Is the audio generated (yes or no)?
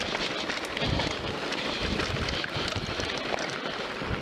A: no